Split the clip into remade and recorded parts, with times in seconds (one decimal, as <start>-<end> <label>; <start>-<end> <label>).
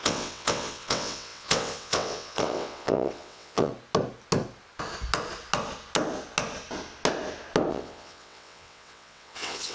0.0-3.7 remade; 3.7-7.7 recorded; 7.7-9.7 remade